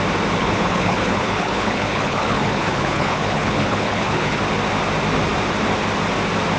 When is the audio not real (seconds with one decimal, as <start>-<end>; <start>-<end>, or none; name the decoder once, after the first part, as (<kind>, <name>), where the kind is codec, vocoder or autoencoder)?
0.4-4.4 (codec, HILCodec)